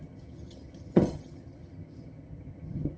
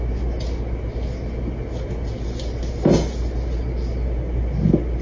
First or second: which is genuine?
second